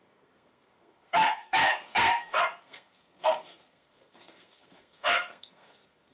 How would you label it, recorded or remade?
remade